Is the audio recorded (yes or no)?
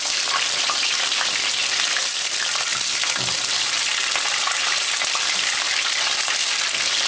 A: yes